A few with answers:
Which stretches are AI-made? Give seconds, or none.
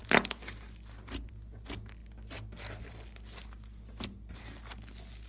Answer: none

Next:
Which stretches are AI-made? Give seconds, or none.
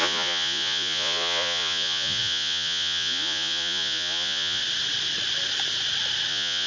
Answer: 0.0-4.6; 6.3-6.7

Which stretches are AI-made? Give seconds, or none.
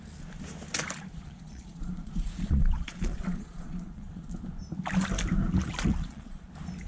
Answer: 1.1-4.3; 5.9-6.5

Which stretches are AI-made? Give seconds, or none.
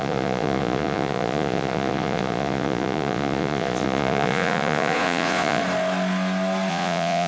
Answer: 0.0-5.6; 6.7-7.3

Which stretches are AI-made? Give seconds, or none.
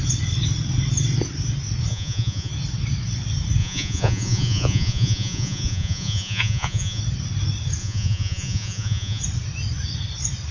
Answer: 1.9-2.5; 3.6-7.0; 7.8-9.2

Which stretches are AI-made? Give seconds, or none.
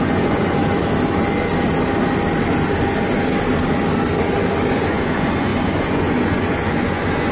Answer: 0.0-0.6; 4.7-7.3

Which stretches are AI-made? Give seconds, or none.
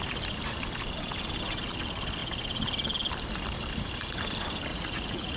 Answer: 4.7-5.4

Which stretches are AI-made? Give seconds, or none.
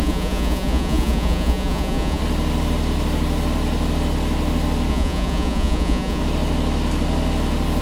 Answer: 0.0-2.2; 4.9-6.2